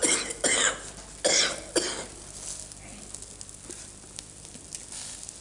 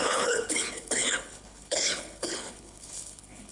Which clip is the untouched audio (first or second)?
first